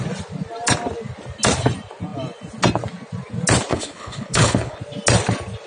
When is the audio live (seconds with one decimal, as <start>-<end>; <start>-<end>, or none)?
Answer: 0.0-3.7; 4.8-5.7